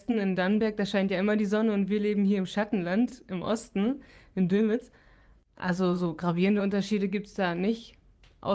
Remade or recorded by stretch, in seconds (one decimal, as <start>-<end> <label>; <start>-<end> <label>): 0.0-0.6 remade; 0.6-3.1 recorded; 3.1-6.6 remade; 6.6-8.5 recorded